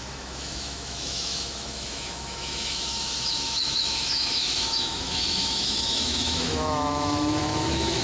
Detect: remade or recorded remade